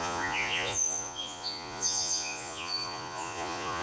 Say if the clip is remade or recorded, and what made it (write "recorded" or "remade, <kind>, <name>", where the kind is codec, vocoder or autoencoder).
remade, vocoder, Vocos